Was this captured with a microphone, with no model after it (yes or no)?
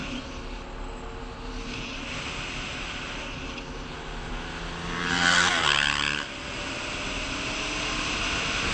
yes